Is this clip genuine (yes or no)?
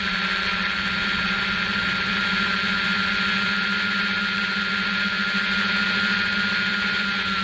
yes